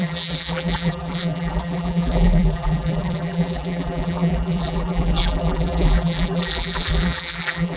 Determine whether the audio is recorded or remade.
remade